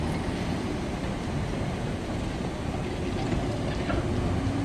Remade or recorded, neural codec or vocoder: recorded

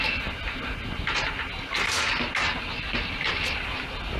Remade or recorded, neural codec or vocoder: recorded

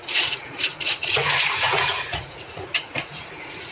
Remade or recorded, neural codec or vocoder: remade, vocoder, Vocos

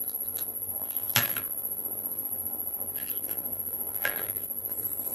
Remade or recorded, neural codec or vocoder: remade, vocoder, BigVGAN v2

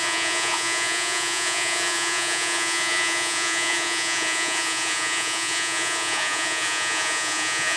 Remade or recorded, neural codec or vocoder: remade, vocoder, Vocos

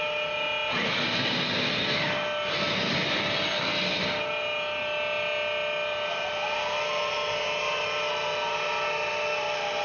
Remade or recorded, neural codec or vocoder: recorded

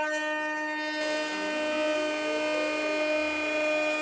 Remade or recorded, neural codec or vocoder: recorded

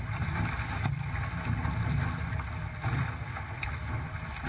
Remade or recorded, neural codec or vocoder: recorded